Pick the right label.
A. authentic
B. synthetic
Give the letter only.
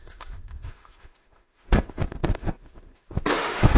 B